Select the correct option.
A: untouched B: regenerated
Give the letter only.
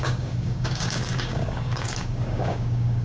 B